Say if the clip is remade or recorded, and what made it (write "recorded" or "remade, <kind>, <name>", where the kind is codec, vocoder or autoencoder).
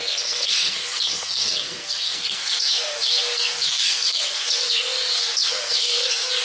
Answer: remade, codec, SNAC